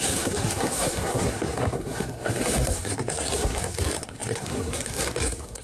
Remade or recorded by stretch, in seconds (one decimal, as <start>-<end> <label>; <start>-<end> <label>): 0.0-5.6 remade